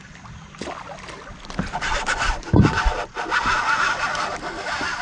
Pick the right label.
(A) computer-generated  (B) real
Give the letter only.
B